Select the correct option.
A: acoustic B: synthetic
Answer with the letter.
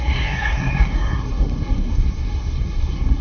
B